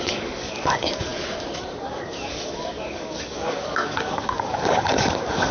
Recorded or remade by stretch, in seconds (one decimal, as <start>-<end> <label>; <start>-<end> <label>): 0.0-1.1 remade; 1.1-1.8 recorded; 1.8-5.5 remade

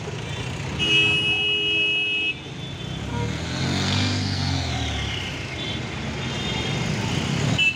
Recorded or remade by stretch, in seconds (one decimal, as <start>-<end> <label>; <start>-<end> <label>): 0.0-3.1 recorded; 3.1-4.7 remade; 4.7-7.8 recorded

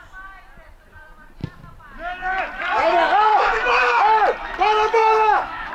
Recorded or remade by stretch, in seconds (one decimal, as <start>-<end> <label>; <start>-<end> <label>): 0.0-3.3 recorded; 3.3-3.8 remade; 3.8-5.0 recorded; 5.0-5.7 remade

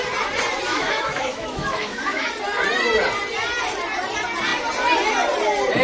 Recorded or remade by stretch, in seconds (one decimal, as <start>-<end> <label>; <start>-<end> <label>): 0.0-0.7 recorded; 0.7-2.3 remade; 2.3-5.8 recorded